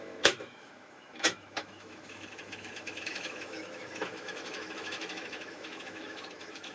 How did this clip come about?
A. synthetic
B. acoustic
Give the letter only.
A